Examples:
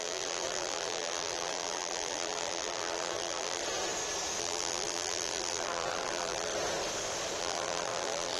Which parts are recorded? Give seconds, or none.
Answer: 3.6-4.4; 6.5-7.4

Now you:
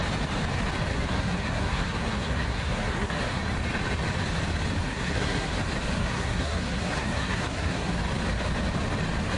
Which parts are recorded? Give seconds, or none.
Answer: 0.0-0.9; 3.4-4.8; 5.5-6.0; 8.0-9.4

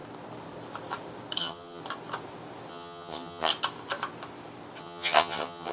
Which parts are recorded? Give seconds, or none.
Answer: 0.0-1.4; 1.8-2.7; 3.5-4.8

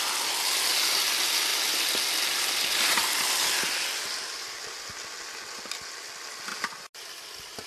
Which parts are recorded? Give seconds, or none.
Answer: 0.0-7.7

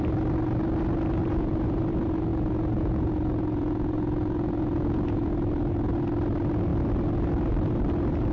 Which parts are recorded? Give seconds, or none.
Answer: 0.0-1.3; 1.8-2.3; 5.3-8.3

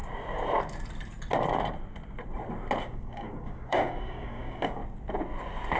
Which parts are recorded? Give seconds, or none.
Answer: 0.0-2.8; 4.8-5.8

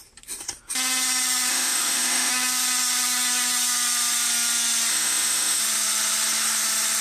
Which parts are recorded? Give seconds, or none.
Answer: 0.0-1.5; 2.3-4.9; 5.6-7.0